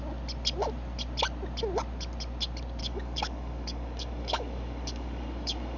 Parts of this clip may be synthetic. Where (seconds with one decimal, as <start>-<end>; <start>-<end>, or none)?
2.8-5.8